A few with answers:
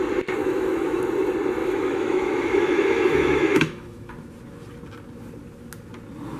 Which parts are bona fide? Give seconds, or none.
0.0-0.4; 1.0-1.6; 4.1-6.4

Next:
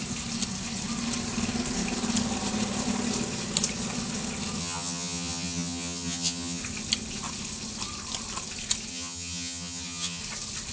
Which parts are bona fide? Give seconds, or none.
0.0-4.6; 6.6-8.9; 10.2-10.7